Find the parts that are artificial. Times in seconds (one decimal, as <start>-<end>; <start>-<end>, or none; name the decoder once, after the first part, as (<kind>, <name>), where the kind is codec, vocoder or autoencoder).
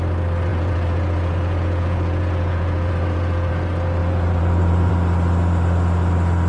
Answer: 0.5-3.5 (vocoder, Vocos); 4.0-4.9